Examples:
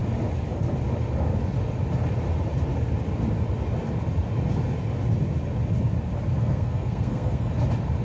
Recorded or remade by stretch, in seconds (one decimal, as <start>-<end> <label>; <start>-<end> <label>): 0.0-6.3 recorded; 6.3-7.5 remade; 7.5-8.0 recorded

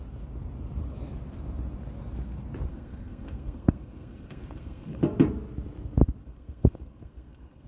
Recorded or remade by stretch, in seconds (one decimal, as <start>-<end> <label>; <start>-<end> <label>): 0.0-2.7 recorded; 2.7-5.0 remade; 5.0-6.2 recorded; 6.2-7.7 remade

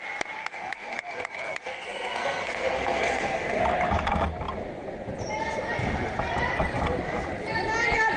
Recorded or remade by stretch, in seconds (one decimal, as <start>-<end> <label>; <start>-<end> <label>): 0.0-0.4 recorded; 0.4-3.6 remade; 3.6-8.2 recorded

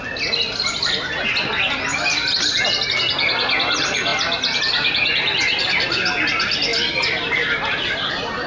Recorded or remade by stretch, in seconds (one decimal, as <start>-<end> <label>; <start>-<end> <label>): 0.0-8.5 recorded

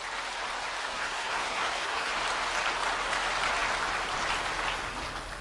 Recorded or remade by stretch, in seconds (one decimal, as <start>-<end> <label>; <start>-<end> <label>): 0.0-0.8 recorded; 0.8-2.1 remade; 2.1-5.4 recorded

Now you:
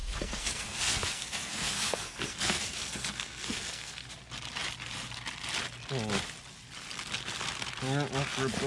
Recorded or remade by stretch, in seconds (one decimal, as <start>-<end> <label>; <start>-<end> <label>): 0.0-4.0 remade; 4.0-8.7 recorded

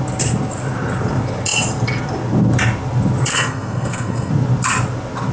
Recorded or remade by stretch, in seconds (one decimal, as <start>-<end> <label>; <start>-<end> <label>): 0.0-3.3 recorded; 3.3-4.3 remade; 4.3-5.3 recorded

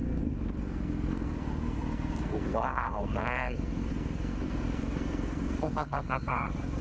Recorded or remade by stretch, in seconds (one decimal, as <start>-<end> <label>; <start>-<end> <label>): 0.0-6.8 remade